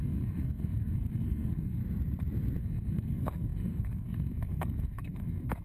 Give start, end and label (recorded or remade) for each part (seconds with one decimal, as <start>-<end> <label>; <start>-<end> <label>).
0.0-1.8 remade; 1.8-2.6 recorded; 2.6-5.6 remade